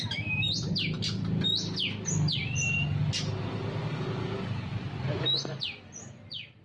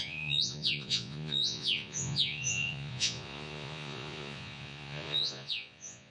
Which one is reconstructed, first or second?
second